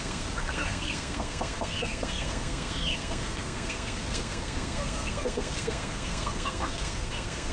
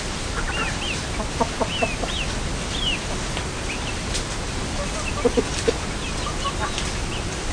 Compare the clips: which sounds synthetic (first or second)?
first